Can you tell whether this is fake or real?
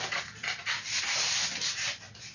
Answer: real